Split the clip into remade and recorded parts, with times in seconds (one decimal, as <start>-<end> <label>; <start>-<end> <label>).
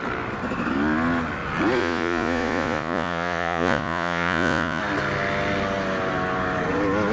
0.0-1.8 recorded; 1.8-4.8 remade; 4.8-7.1 recorded